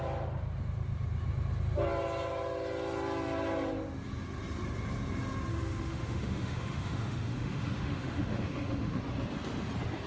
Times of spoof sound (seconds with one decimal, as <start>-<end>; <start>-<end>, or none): 5.5-9.0